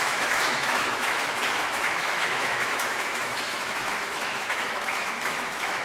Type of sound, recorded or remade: remade